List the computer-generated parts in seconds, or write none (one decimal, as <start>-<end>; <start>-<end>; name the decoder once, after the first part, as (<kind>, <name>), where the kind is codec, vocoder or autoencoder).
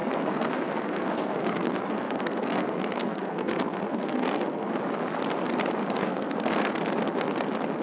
0.0-4.7 (codec, SNAC); 6.0-6.7